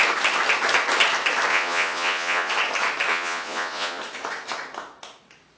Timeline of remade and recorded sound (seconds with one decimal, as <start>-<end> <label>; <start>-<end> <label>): 0.0-1.5 recorded; 1.5-2.5 remade; 2.5-3.1 recorded; 3.1-4.0 remade; 4.0-5.6 recorded